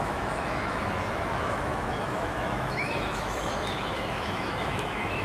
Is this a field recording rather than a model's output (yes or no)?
no